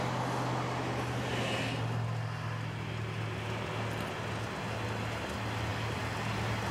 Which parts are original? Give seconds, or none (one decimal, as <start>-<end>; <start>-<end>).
0.0-6.7